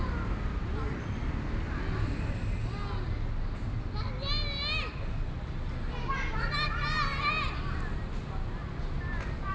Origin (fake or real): real